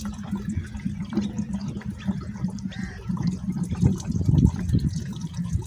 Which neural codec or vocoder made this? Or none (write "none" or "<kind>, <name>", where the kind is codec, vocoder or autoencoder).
vocoder, BigVGAN v2